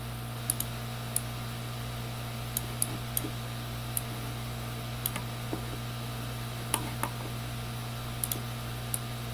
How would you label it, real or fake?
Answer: real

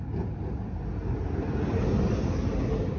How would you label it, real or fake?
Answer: real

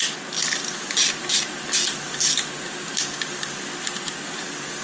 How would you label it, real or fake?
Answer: real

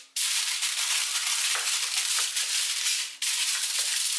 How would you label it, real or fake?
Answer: real